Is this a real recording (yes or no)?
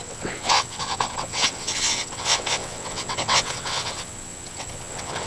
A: no